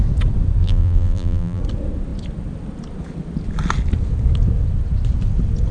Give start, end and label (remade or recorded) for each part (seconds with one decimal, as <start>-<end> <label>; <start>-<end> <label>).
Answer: 0.0-0.6 recorded; 0.6-1.6 remade; 1.6-5.7 recorded